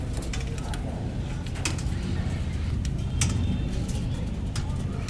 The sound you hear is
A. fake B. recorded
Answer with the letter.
B